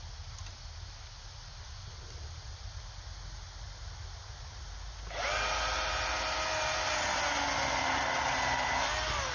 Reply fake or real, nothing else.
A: real